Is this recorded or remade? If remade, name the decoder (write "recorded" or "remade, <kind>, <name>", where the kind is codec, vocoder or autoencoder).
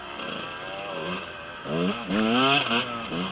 recorded